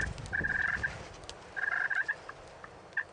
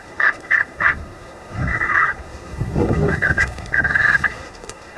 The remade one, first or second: second